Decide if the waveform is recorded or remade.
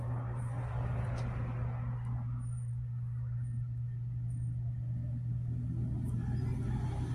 recorded